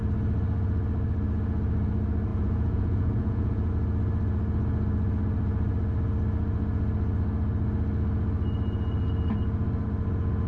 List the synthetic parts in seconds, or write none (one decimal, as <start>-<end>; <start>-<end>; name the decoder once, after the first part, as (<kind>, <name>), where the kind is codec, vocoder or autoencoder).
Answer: 2.3-3.7 (vocoder, Vocos)